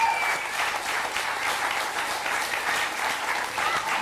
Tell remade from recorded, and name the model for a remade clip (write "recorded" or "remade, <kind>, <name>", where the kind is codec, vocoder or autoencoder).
remade, vocoder, BigVGAN v2